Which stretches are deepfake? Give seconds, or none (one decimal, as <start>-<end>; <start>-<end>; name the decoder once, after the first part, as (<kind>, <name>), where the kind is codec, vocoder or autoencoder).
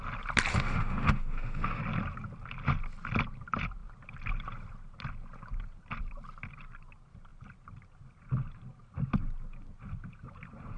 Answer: 0.5-1.8 (autoencoder, DAC-VAE)